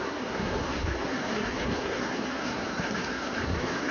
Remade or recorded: remade